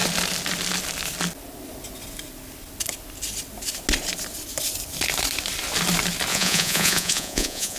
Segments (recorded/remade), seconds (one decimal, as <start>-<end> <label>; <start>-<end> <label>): 0.0-6.3 recorded; 6.3-7.8 remade